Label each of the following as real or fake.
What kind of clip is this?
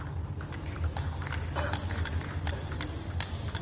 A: real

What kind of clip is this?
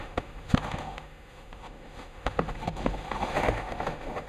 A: fake